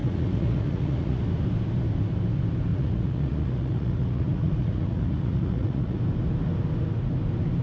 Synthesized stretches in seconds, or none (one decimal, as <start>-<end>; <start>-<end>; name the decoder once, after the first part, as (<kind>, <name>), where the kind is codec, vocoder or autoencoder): 0.0-1.2 (vocoder, Vocos); 2.7-6.0